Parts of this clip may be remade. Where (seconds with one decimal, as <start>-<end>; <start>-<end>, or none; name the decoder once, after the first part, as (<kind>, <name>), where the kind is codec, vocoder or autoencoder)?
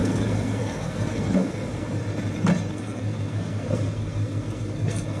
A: 0.0-2.0 (codec, SNAC); 2.7-5.2